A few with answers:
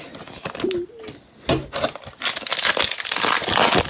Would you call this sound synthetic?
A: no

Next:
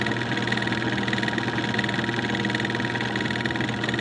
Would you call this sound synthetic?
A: no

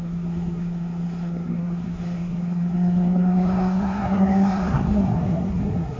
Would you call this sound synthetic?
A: yes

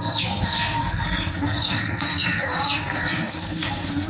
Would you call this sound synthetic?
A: yes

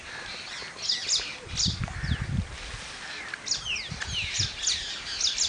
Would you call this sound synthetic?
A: no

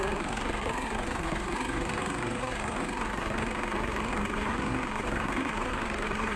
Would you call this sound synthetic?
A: yes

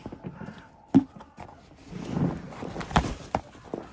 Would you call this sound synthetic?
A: no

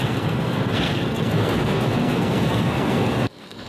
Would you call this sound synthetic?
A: yes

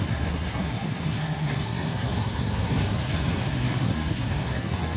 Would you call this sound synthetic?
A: yes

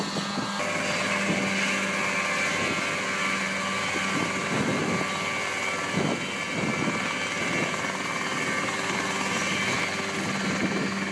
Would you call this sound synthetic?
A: no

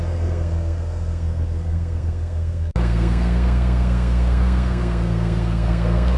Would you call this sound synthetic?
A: yes